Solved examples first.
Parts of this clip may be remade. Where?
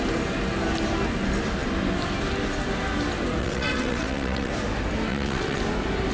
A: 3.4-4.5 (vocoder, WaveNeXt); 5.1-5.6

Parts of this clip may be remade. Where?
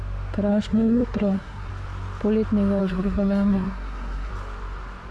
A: 0.5-1.7 (codec, SNAC); 2.8-4.3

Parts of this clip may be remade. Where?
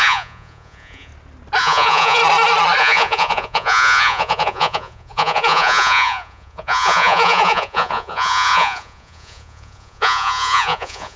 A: 0.0-1.1 (vocoder, Vocos); 1.6-2.2; 2.8-11.2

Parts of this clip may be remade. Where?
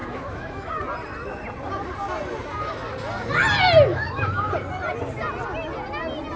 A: 0.0-0.7 (autoencoder, DAC-VAE); 3.9-4.5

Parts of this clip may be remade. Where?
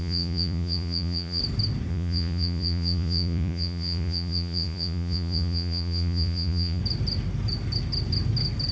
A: 0.0-1.4 (vocoder, Vocos); 1.9-6.8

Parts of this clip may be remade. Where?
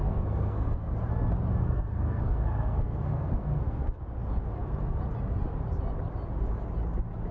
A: 0.0-0.9 (codec, SNAC); 1.6-4.0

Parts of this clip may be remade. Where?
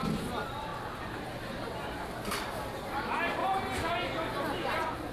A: none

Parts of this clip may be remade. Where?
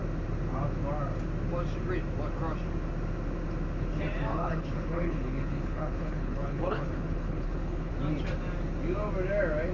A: 4.3-7.9 (codec, HILCodec)